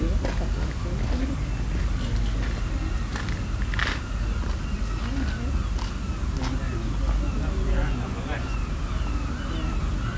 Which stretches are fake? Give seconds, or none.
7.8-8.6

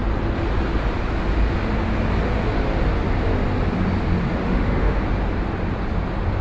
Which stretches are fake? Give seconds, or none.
4.4-5.0

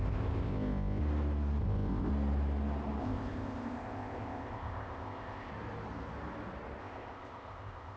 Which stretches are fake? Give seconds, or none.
0.0-1.0; 1.6-2.1; 3.0-5.5; 6.8-8.0

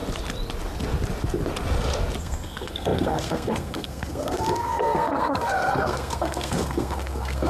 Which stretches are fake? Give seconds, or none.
2.2-7.5

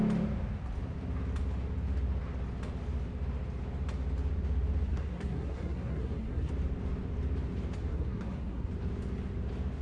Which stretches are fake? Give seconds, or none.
4.9-6.5; 7.9-8.7

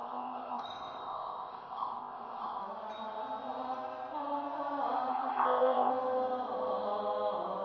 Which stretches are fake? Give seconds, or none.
0.0-2.6; 5.1-5.9